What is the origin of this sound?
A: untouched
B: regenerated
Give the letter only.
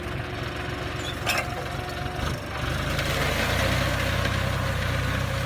A